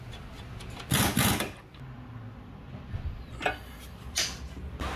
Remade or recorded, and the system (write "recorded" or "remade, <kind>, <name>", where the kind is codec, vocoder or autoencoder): recorded